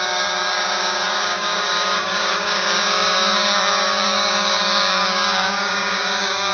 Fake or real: fake